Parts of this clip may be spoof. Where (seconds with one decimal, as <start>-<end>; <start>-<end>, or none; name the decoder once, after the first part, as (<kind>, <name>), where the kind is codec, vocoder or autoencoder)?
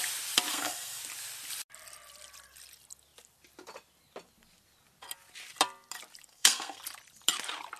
0.5-1.0 (codec, SNAC); 6.3-6.8